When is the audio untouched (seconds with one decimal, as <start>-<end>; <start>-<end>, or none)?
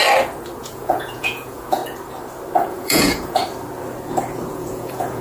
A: 0.0-0.6; 1.8-2.7; 3.4-4.5